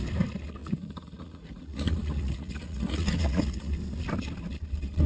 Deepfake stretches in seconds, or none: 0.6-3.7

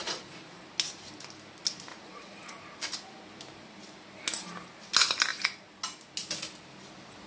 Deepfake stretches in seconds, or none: 0.0-0.6; 1.9-2.5

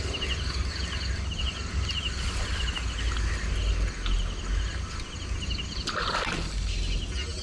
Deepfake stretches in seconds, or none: none

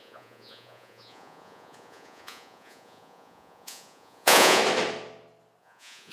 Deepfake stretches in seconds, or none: 0.0-4.6; 5.6-6.1